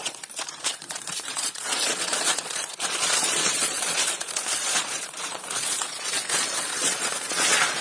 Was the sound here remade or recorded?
remade